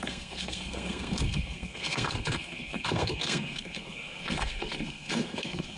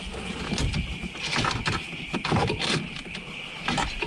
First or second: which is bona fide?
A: second